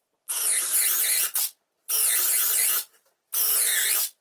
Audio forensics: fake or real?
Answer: real